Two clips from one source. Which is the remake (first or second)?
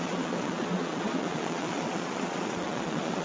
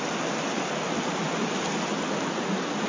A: first